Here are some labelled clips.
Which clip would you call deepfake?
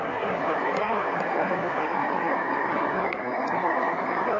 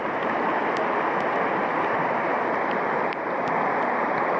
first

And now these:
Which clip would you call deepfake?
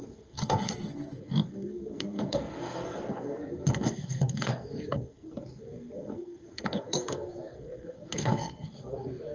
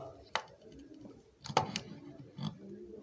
first